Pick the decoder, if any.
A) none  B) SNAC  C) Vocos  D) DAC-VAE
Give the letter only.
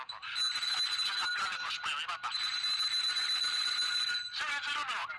A